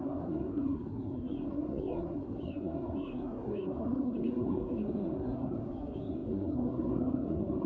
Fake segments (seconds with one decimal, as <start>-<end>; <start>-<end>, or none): 0.0-7.7